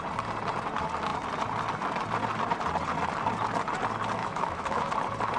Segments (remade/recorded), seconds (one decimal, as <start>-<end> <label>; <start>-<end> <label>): 0.0-4.2 recorded; 4.2-4.9 remade; 4.9-5.4 recorded